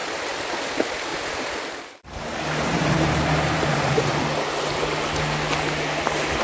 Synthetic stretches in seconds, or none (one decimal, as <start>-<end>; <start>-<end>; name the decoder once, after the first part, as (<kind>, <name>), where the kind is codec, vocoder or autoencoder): 0.0-0.6 (vocoder, BigVGAN v2); 1.1-4.2